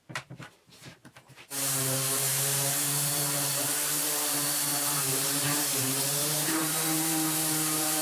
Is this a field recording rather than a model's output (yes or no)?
no